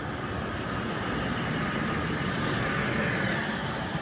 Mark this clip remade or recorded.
recorded